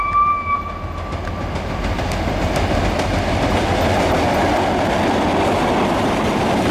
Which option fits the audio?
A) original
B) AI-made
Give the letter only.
A